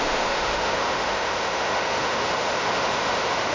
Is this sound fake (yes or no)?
yes